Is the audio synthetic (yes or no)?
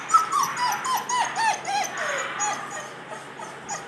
no